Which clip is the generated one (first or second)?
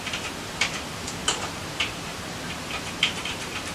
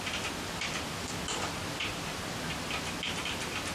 first